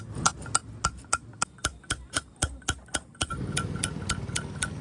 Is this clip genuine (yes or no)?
yes